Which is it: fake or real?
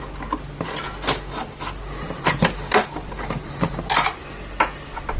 real